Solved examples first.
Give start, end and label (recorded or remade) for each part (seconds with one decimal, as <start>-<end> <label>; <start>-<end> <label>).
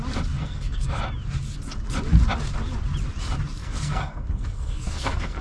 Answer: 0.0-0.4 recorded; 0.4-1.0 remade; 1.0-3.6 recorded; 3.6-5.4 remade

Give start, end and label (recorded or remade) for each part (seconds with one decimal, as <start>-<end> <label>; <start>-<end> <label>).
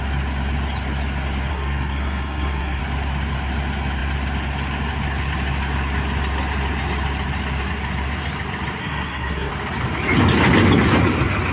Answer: 0.0-1.5 recorded; 1.5-2.8 remade; 2.8-8.8 recorded; 8.8-9.5 remade; 9.5-11.5 recorded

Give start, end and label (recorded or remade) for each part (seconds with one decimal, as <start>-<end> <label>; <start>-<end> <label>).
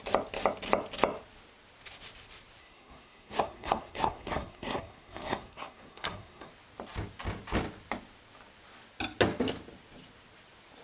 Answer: 0.0-2.6 recorded; 2.6-6.5 remade; 6.5-10.8 recorded